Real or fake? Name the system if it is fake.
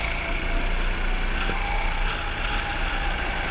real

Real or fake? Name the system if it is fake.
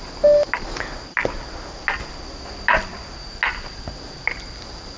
real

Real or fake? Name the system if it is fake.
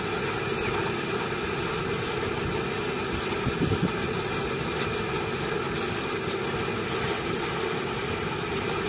real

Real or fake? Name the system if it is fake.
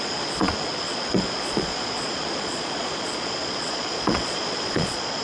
fake, vocoder, Vocos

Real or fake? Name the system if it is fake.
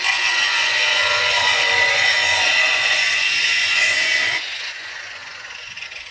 fake, vocoder, Vocos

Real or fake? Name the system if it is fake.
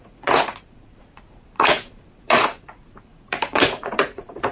fake, vocoder, Vocos